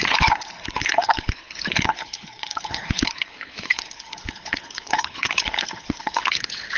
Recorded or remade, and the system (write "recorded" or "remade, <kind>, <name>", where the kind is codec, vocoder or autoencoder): remade, codec, HILCodec